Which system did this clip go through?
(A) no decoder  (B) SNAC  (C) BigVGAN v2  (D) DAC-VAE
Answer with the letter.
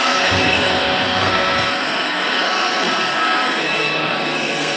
B